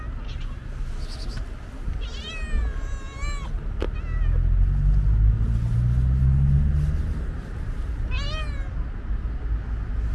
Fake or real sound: real